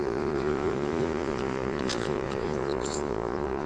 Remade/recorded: remade